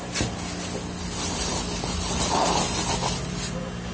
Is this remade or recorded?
recorded